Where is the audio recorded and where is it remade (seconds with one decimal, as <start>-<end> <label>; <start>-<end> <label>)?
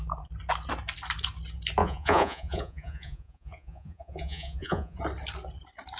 0.0-1.8 recorded; 1.8-5.0 remade; 5.0-6.0 recorded